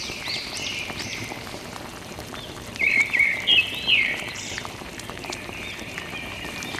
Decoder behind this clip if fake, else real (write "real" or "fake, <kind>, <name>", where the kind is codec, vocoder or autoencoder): fake, vocoder, BigVGAN v2